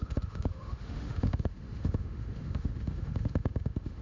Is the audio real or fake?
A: fake